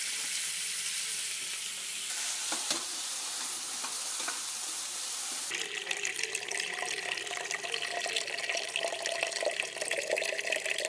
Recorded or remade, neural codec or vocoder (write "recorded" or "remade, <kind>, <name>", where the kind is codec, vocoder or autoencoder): recorded